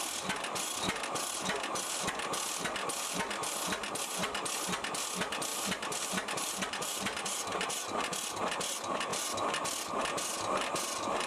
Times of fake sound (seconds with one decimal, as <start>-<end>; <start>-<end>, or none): 5.5-7.7; 9.1-9.9